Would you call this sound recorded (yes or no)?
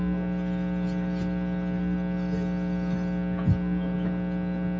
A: yes